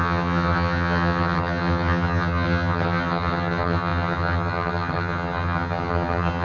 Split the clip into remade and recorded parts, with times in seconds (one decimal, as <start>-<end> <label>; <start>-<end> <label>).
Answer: 0.0-6.4 remade